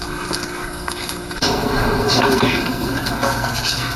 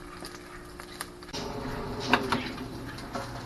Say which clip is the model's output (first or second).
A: first